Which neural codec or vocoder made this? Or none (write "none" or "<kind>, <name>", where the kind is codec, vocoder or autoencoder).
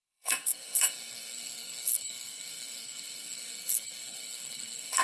codec, SNAC